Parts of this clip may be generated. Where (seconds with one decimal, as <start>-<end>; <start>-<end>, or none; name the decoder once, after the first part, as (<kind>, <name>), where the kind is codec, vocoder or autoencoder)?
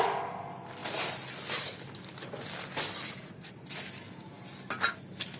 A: none